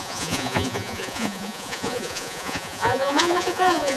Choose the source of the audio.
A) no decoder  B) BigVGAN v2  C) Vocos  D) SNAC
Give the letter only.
C